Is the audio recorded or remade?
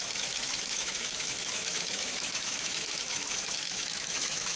remade